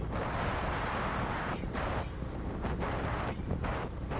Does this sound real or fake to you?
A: real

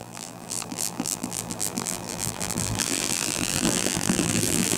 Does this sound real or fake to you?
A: fake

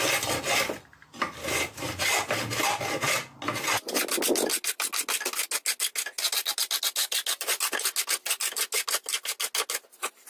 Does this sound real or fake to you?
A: real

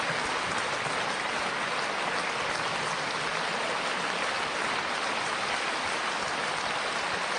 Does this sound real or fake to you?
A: real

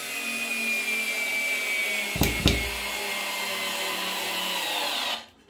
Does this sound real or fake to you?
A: real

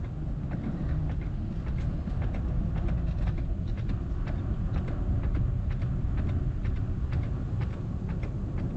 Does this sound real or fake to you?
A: real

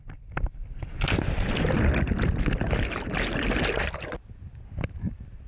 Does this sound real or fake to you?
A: real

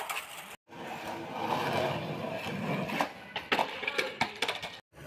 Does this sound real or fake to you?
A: real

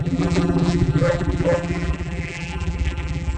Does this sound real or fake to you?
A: fake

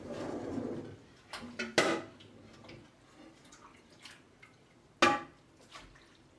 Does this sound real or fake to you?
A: real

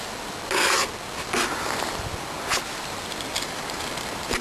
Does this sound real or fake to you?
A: real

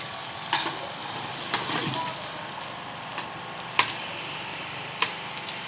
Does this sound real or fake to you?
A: fake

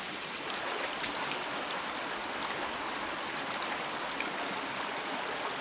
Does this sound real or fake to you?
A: real